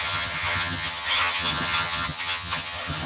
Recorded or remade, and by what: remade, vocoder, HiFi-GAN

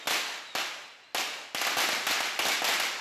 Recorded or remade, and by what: recorded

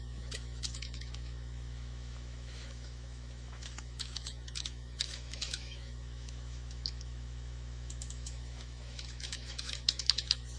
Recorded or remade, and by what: remade, autoencoder, DAC-VAE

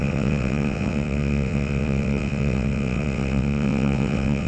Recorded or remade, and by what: remade, vocoder, WaveNeXt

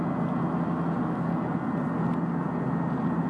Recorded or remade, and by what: recorded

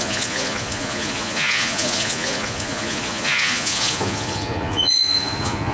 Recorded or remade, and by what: remade, vocoder, Vocos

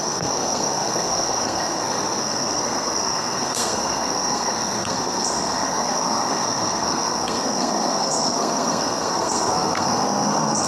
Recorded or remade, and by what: remade, codec, SNAC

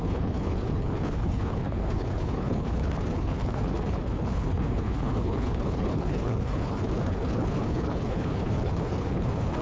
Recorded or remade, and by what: remade, codec, HILCodec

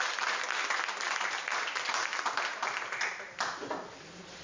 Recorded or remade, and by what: recorded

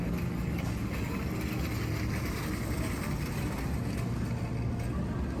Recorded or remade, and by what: recorded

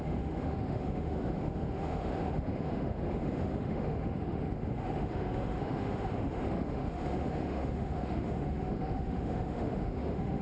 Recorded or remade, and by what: remade, autoencoder, DAC-VAE